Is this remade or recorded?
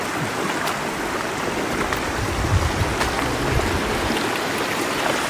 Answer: recorded